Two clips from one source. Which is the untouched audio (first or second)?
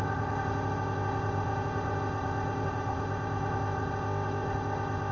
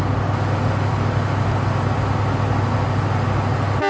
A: second